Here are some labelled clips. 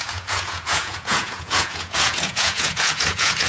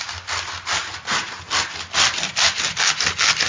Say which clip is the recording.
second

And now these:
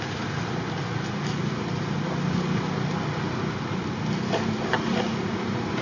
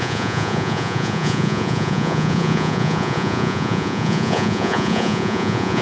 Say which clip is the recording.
first